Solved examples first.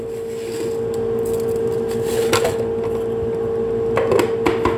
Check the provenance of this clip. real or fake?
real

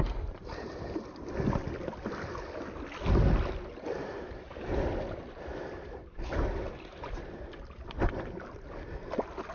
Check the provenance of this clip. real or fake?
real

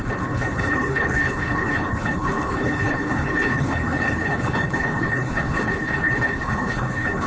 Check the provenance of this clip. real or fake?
fake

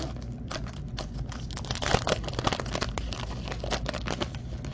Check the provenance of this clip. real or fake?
real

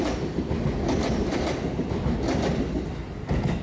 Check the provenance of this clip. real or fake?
real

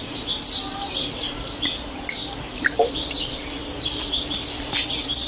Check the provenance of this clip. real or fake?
real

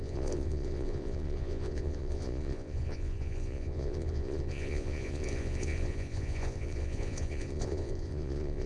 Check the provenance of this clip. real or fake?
fake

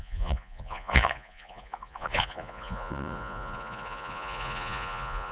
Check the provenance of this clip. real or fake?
fake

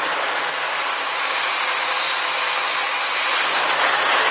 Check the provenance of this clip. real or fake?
real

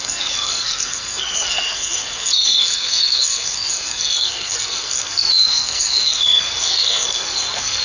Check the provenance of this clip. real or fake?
fake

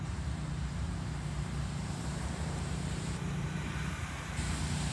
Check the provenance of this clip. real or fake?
fake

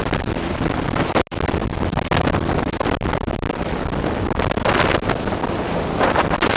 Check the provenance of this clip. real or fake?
real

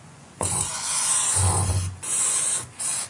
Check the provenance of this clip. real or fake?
fake